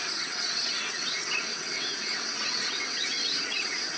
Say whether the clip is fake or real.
fake